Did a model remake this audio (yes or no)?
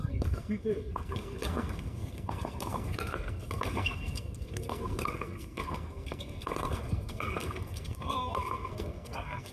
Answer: yes